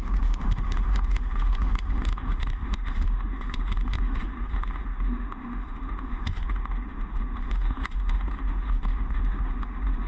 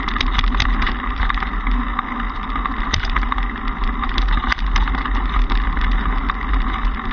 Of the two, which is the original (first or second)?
second